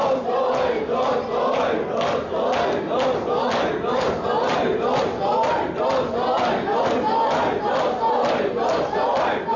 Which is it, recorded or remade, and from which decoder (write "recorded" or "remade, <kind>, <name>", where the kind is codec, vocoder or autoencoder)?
recorded